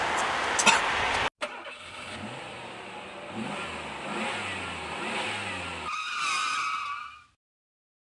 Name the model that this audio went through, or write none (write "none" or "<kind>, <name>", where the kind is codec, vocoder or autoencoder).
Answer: none